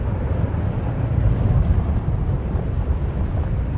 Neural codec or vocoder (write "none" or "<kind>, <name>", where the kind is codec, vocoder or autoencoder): none